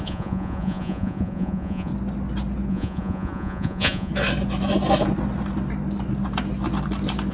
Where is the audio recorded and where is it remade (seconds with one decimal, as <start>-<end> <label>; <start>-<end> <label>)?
0.0-1.9 remade; 1.9-2.7 recorded; 2.7-4.1 remade; 4.1-7.3 recorded